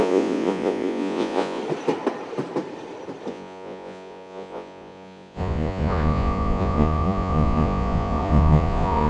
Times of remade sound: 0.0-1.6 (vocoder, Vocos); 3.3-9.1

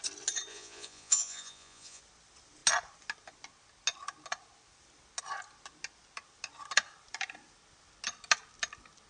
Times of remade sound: 0.5-2.0 (vocoder, Vocos)

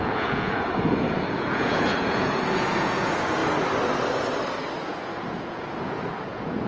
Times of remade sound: 0.0-3.4 (vocoder, Vocos); 4.8-6.7